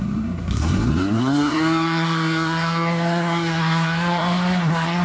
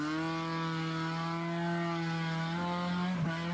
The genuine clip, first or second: second